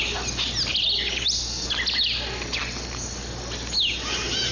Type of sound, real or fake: real